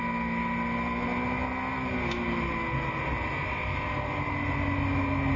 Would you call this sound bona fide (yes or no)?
yes